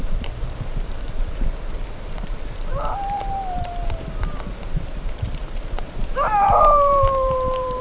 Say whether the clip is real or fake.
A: fake